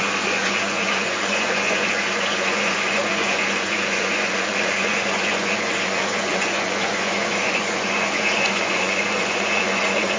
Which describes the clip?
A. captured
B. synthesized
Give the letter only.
B